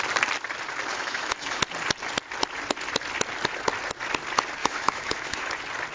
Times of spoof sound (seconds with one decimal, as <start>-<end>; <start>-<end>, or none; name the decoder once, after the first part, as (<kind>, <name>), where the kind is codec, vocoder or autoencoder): 0.9-1.6 (autoencoder, DAC-VAE); 4.6-5.5

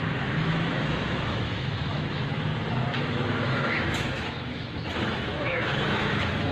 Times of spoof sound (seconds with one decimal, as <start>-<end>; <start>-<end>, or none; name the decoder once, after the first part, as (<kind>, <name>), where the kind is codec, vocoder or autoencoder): 0.0-2.5 (autoencoder, DAC-VAE); 3.0-6.5

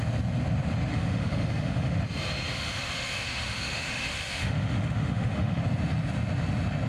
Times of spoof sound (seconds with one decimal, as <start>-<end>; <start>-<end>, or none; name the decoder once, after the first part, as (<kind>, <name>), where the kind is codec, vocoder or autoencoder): 0.9-2.0 (autoencoder, DAC-VAE); 2.5-5.6

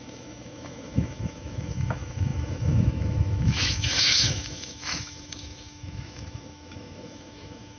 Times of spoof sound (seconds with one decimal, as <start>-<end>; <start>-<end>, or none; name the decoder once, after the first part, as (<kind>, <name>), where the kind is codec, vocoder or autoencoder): 0.0-7.8 (autoencoder, DAC-VAE)

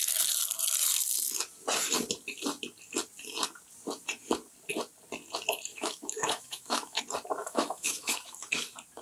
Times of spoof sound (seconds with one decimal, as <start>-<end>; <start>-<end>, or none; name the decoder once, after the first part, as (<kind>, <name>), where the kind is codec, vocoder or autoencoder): 5.7-7.0 (autoencoder, DAC-VAE); 7.4-8.5

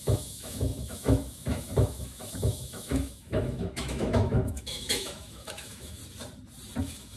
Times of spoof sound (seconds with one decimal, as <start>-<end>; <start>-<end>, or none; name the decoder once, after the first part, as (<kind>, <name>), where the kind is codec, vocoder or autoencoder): 0.0-6.0 (autoencoder, DAC-VAE); 6.8-7.2

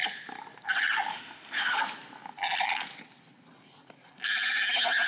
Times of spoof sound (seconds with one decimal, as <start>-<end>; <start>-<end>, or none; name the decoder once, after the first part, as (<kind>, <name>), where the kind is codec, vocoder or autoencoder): 1.1-1.8 (autoencoder, DAC-VAE)